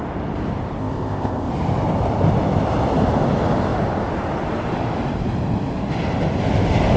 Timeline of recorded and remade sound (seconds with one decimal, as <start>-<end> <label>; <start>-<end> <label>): 0.0-0.8 recorded; 0.8-1.5 remade; 1.5-7.0 recorded